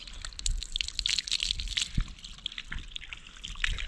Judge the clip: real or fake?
real